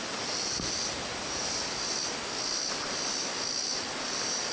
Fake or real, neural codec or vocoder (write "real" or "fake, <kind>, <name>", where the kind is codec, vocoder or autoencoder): real